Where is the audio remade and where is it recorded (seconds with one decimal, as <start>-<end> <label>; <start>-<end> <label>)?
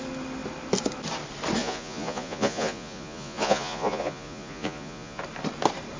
0.0-1.6 recorded; 1.6-5.2 remade; 5.2-6.0 recorded